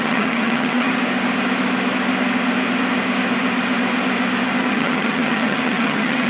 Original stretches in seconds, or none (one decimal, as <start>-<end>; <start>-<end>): 0.9-4.6